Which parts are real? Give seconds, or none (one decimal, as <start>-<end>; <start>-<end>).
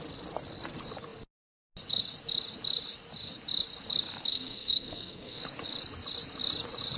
0.0-4.3; 5.4-7.0